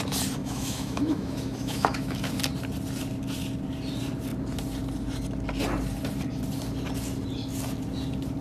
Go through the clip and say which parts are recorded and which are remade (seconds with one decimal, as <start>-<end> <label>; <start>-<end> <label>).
0.0-0.4 recorded; 0.4-2.3 remade; 2.3-8.4 recorded